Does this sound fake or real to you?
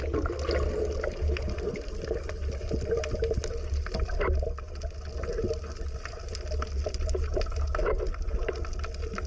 real